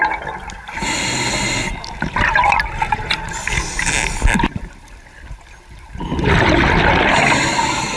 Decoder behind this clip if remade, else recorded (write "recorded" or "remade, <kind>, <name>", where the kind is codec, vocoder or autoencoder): recorded